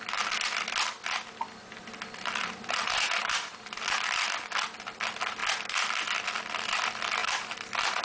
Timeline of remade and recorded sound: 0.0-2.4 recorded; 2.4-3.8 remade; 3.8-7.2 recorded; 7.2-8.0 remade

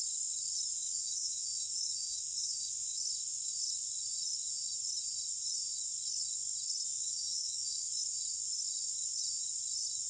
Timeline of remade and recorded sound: 0.0-0.8 recorded; 0.8-3.0 remade; 3.0-6.9 recorded; 6.9-8.0 remade; 8.0-10.1 recorded

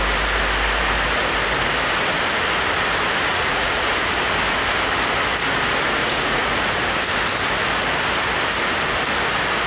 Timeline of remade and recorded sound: 0.0-3.3 recorded; 3.3-3.9 remade; 3.9-6.0 recorded; 6.0-6.6 remade; 6.6-9.7 recorded

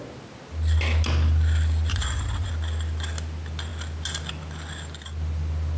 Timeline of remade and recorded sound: 0.0-1.9 recorded; 1.9-2.5 remade; 2.5-5.8 recorded

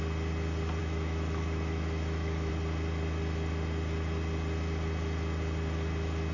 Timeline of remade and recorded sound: 0.0-0.8 recorded; 0.8-2.5 remade; 2.5-6.3 recorded